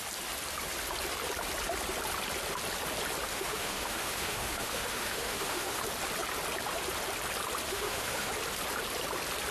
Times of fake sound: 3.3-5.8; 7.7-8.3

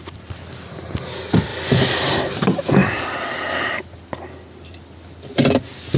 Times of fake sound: 1.5-2.1; 2.8-3.5